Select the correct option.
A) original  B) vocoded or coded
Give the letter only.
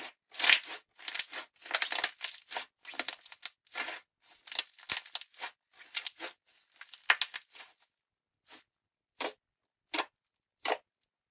A